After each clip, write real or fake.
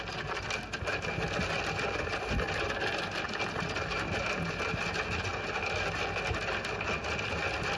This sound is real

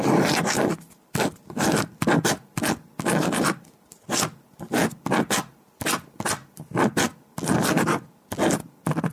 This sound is real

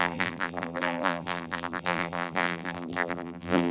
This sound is fake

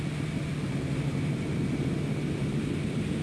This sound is real